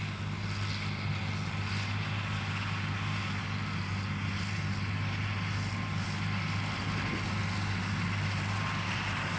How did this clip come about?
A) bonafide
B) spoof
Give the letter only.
A